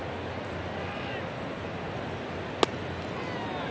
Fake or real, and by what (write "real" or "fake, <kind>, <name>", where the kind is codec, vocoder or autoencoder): real